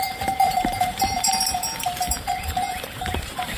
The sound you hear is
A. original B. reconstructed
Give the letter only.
B